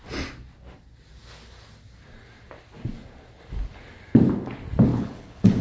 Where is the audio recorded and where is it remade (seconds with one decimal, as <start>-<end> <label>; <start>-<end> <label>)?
0.0-4.9 recorded; 4.9-5.6 remade